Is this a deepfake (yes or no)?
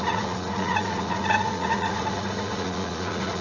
yes